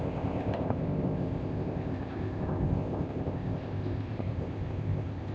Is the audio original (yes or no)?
no